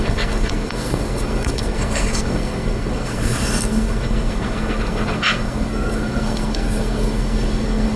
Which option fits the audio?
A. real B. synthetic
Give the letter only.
B